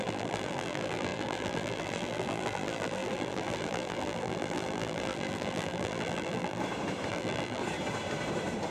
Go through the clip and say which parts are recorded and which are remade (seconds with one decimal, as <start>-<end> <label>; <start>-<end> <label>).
0.0-6.6 remade; 6.6-7.1 recorded; 7.1-7.6 remade; 7.6-8.7 recorded